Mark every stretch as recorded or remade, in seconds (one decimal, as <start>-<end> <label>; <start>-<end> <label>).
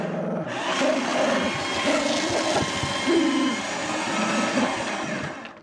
0.0-5.6 recorded